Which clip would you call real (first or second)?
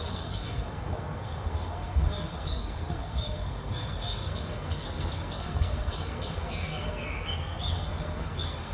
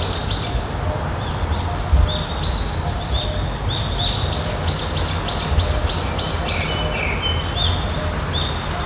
second